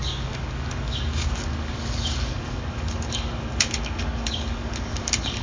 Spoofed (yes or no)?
yes